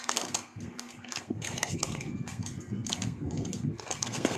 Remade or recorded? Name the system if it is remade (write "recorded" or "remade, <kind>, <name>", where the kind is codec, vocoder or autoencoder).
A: remade, codec, SNAC